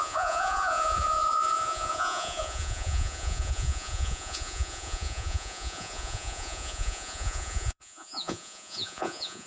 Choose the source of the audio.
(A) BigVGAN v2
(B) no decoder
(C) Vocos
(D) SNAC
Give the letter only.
C